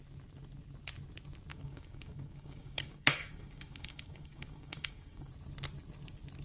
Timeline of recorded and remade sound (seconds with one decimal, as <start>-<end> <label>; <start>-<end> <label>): 0.0-1.5 recorded; 1.5-5.3 remade; 5.3-6.4 recorded